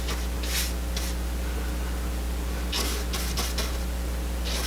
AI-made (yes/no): no